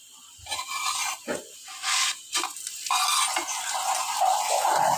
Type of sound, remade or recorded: recorded